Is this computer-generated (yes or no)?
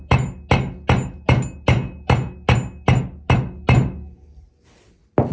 no